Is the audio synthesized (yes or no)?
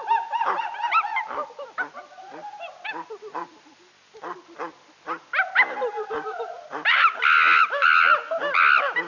no